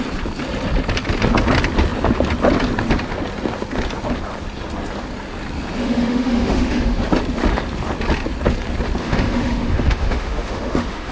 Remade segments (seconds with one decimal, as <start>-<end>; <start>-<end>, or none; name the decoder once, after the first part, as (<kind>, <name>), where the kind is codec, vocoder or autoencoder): 5.8-7.0 (autoencoder, DAC-VAE); 9.0-11.1